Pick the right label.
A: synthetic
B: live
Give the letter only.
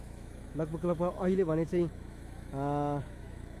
A